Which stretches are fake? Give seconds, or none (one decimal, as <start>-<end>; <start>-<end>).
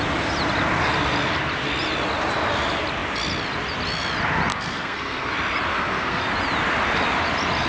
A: 4.5-5.3; 5.7-6.2